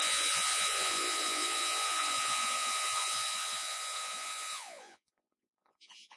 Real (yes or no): no